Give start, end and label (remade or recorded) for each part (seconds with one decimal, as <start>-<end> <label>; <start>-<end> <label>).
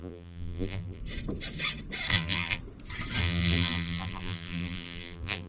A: 0.0-1.0 remade; 1.0-2.1 recorded; 2.1-2.6 remade; 2.6-3.2 recorded; 3.2-5.5 remade